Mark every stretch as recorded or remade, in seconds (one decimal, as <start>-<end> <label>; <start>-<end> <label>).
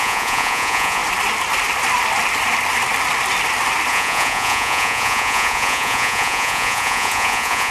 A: 0.0-1.0 remade; 1.0-3.9 recorded; 3.9-7.7 remade